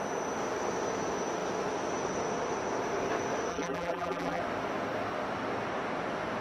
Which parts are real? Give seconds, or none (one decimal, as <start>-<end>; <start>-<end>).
0.0-3.5; 4.4-6.4